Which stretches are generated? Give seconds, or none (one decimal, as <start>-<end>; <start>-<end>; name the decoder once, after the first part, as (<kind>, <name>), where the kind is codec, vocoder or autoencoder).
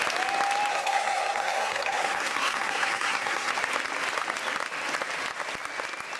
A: 0.7-3.5 (codec, SNAC)